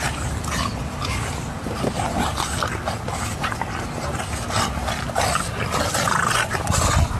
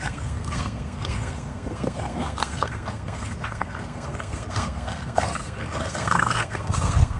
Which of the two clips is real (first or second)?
first